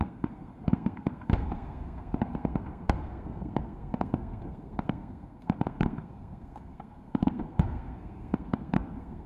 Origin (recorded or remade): remade